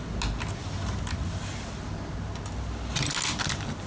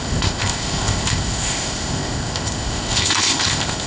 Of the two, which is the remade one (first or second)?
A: second